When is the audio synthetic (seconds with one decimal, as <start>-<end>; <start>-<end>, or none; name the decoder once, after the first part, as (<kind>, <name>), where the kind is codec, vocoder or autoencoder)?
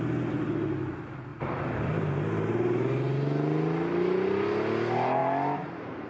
none